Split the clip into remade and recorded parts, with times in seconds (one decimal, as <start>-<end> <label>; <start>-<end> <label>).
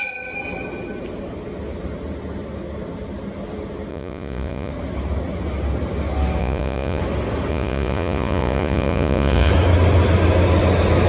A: 0.0-3.9 recorded; 3.9-4.7 remade; 4.7-6.4 recorded; 6.4-7.0 remade; 7.0-7.5 recorded; 7.5-9.5 remade; 9.5-11.1 recorded